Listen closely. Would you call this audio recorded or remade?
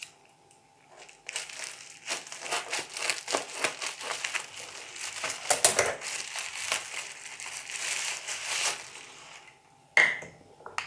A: recorded